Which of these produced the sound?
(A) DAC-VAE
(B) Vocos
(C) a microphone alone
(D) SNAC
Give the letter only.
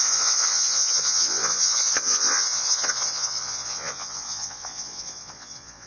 B